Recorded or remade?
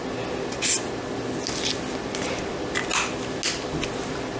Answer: recorded